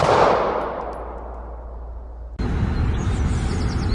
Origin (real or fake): real